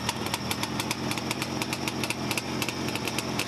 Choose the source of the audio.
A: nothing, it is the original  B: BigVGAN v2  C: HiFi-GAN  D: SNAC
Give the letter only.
A